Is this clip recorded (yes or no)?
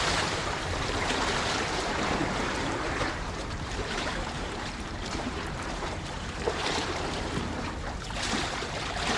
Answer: no